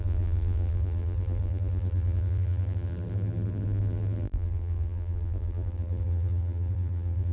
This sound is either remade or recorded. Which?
remade